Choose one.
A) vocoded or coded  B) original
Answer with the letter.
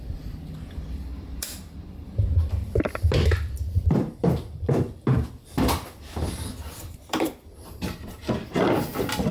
A